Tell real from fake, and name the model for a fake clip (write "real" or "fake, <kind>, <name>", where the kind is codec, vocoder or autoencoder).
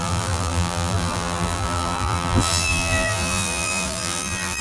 fake, vocoder, BigVGAN v2